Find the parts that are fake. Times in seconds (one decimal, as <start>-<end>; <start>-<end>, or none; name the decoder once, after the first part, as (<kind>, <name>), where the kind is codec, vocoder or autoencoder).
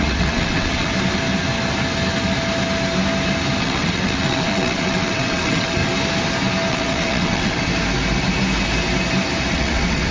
0.0-0.9 (vocoder, WaveNeXt); 3.6-5.8; 6.7-7.7; 9.5-10.1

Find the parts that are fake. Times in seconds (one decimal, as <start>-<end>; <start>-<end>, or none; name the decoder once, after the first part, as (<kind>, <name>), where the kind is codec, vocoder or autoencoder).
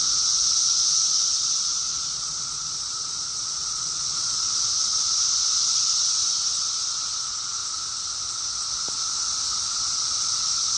0.0-7.6 (vocoder, Vocos); 9.8-10.8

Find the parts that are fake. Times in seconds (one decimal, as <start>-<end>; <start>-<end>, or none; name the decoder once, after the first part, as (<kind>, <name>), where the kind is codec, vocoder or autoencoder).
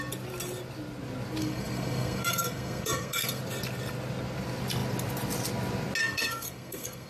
1.4-3.4 (codec, SNAC); 6.0-7.1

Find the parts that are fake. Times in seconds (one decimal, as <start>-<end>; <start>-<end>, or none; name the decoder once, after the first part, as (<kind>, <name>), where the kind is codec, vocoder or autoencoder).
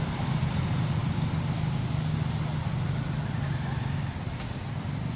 none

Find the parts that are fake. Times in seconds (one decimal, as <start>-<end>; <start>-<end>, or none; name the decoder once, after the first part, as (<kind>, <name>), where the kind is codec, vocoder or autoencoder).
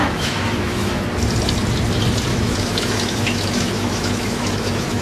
0.0-1.0 (autoencoder, DAC-VAE); 2.3-5.0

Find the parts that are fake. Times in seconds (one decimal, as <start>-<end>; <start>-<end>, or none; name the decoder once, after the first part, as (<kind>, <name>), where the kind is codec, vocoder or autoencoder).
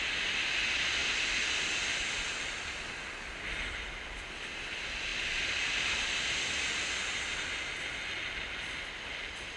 none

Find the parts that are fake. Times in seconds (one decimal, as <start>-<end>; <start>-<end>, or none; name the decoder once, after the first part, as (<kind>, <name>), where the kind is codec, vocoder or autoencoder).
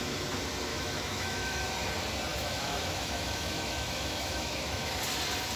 0.7-1.6 (autoencoder, DAC-VAE); 2.3-5.0